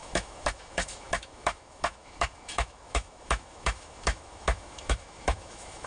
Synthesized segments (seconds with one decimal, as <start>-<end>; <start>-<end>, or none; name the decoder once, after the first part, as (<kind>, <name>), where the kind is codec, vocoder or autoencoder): 0.0-5.9 (autoencoder, DAC-VAE)